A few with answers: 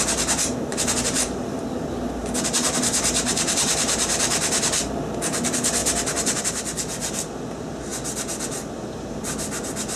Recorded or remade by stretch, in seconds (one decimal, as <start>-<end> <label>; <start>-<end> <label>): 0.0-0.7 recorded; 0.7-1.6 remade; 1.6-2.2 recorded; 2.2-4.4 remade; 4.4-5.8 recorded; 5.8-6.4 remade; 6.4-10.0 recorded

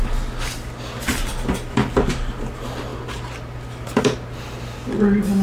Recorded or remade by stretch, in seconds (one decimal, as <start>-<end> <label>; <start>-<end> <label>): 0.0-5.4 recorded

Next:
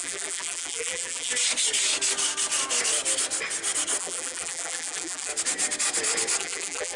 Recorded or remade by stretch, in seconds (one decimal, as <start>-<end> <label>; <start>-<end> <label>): 0.0-1.3 remade; 1.3-4.0 recorded; 4.0-5.3 remade; 5.3-6.4 recorded; 6.4-7.0 remade

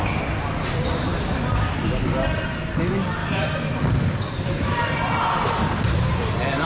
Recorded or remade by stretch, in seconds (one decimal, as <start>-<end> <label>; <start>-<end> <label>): 0.0-3.2 recorded; 3.2-5.2 remade; 5.2-6.7 recorded

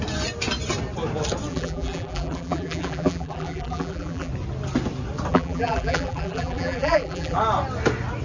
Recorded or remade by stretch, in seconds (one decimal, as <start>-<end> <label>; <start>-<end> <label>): 0.0-1.5 recorded; 1.5-4.3 remade; 4.3-5.3 recorded; 5.3-7.4 remade; 7.4-8.2 recorded